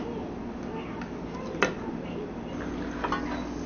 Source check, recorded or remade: recorded